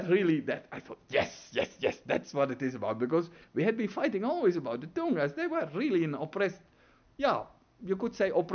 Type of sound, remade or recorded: recorded